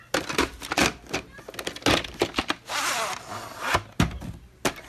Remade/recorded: recorded